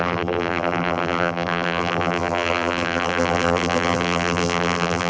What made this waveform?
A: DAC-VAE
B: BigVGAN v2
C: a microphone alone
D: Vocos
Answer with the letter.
B